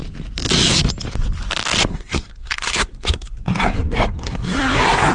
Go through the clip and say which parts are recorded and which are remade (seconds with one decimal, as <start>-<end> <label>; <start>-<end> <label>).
0.0-1.9 recorded; 1.9-5.1 remade